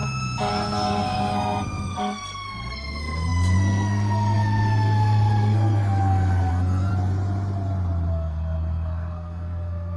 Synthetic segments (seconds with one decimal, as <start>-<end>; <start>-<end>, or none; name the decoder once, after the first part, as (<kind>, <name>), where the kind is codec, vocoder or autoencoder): 0.5-6.9 (codec, SNAC); 8.1-10.0